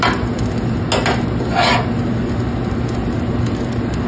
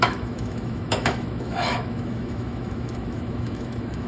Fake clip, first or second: second